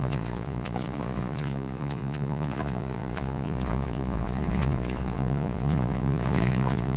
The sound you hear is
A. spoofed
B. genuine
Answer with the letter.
A